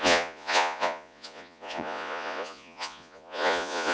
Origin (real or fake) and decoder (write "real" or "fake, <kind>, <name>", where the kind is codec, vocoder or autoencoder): fake, vocoder, Vocos